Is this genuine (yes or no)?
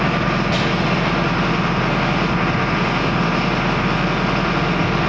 yes